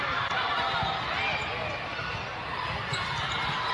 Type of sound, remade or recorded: recorded